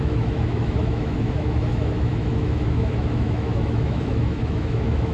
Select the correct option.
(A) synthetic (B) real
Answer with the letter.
A